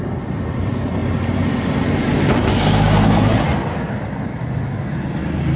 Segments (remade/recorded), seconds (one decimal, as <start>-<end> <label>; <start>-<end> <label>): 0.0-5.6 recorded